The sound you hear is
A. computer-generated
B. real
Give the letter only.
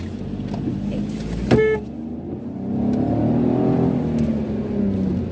B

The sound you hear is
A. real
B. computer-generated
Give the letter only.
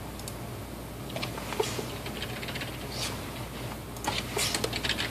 A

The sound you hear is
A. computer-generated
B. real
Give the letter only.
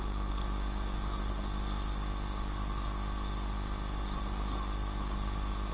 B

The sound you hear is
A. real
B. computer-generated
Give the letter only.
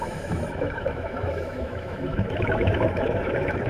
B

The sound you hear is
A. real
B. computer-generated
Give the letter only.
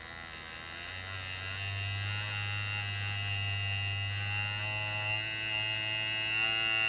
A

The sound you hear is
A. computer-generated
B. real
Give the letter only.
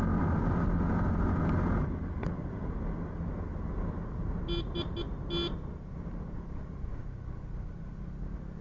B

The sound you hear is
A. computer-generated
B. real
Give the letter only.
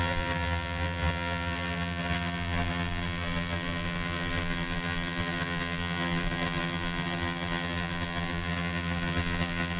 A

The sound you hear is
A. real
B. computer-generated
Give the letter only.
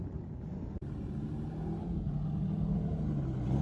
A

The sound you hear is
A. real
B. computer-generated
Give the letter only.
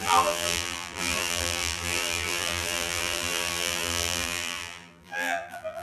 B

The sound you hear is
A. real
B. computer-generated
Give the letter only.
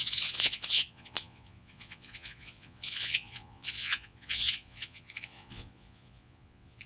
B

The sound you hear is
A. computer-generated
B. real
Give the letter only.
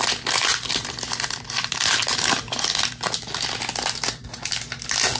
B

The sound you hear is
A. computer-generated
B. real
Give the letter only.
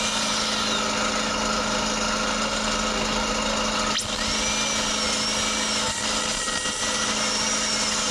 B